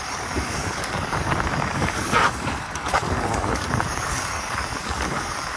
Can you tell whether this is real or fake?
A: fake